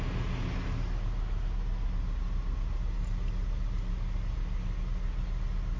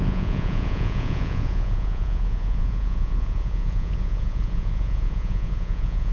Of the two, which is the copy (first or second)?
second